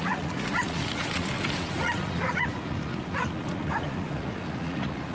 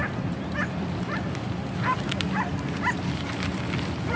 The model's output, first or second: first